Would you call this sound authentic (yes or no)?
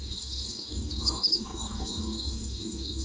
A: no